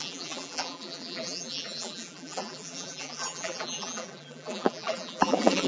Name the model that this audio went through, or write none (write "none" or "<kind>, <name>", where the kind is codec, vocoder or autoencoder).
vocoder, BigVGAN v2